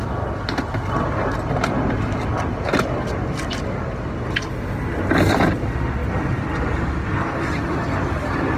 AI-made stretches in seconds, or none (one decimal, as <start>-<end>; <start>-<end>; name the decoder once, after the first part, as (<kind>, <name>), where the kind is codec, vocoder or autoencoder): none